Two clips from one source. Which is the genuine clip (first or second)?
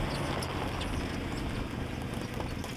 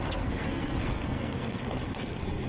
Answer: first